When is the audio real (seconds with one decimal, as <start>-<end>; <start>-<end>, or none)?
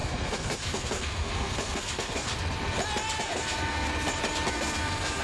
2.3-3.2; 3.9-4.5